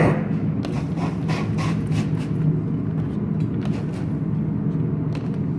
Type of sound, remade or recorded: recorded